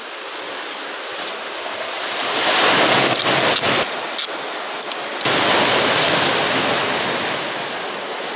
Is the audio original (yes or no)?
yes